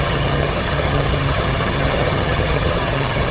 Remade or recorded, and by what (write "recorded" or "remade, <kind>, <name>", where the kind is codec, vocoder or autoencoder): remade, vocoder, HiFi-GAN